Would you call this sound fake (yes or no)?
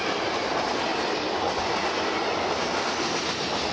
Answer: no